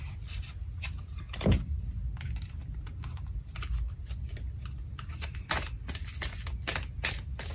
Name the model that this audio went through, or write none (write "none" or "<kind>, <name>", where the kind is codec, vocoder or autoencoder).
none